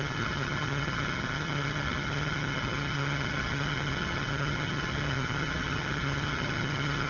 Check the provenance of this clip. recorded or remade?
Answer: remade